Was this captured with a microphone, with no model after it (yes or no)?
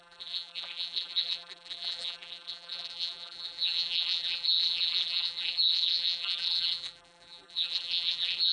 no